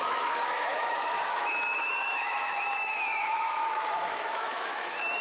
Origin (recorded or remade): remade